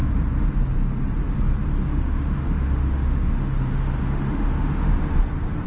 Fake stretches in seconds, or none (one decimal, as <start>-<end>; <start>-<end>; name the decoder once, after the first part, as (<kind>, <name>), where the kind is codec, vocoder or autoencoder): 1.8-5.2 (autoencoder, DAC-VAE)